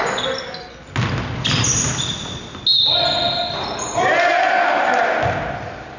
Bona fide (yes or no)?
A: yes